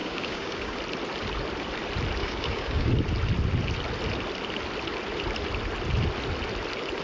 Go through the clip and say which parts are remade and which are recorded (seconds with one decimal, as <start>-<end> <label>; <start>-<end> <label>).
0.0-0.8 remade; 0.8-2.2 recorded; 2.2-2.9 remade; 2.9-7.0 recorded